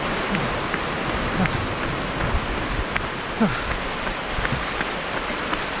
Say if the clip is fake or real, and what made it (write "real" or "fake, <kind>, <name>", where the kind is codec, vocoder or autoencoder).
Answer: real